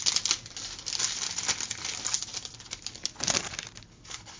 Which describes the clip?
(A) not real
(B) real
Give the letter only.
B